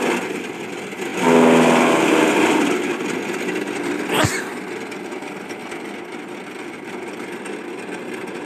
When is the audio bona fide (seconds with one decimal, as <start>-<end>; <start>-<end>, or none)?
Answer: 0.0-8.5